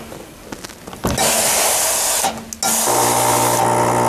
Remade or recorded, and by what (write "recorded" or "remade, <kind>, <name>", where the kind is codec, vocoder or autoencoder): recorded